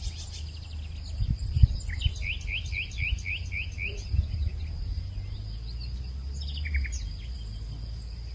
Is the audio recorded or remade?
recorded